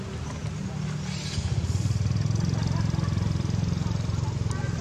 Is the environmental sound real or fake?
real